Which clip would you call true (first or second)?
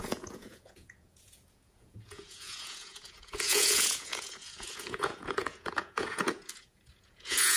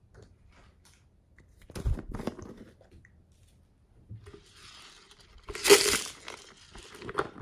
second